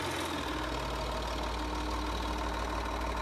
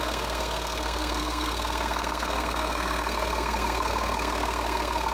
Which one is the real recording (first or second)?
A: first